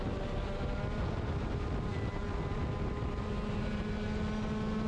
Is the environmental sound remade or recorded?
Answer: recorded